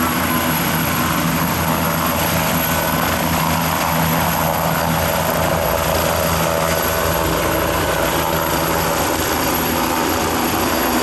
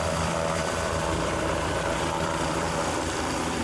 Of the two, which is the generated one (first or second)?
second